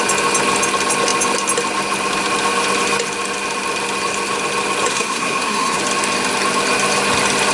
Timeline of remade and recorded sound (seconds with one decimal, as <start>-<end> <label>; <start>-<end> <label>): 0.0-4.9 recorded; 4.9-5.8 remade; 5.8-7.5 recorded